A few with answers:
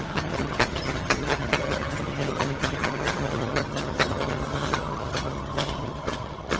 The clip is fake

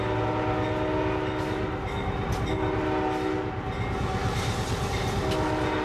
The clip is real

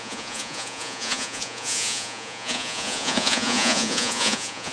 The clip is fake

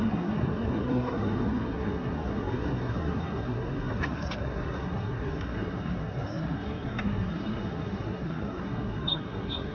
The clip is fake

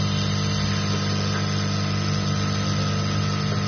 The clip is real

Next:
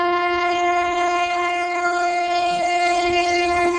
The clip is fake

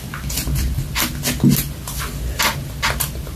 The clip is real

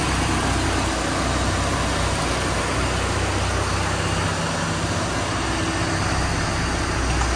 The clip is real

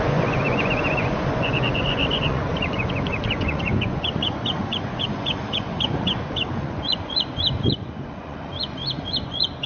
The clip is fake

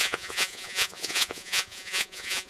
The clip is fake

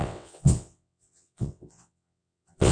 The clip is fake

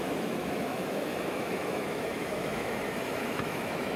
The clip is fake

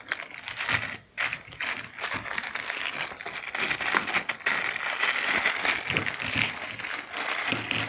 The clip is real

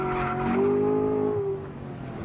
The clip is real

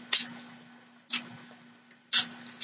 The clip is real